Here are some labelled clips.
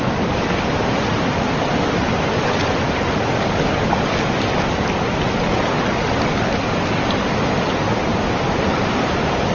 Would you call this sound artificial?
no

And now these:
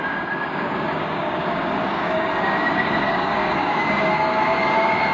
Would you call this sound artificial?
yes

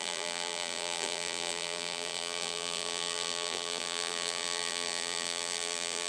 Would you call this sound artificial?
yes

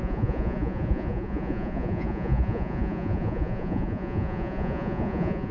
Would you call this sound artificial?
yes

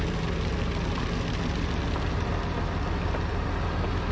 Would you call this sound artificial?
no